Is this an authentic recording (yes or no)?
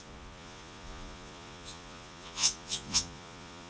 no